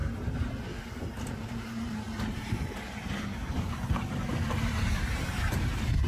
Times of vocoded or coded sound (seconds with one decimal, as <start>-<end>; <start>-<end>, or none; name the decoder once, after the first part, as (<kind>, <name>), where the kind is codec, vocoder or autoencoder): 1.4-6.1 (vocoder, BigVGAN v2)